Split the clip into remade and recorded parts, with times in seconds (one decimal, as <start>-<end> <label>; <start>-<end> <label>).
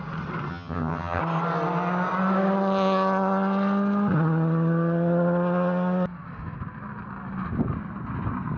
0.0-0.5 recorded; 0.5-1.2 remade; 1.2-8.6 recorded